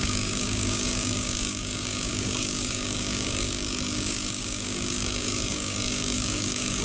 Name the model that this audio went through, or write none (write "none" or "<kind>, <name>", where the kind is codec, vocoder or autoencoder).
codec, DAC